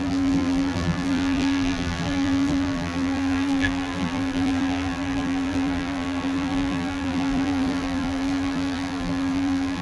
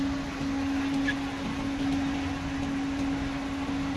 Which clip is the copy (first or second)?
first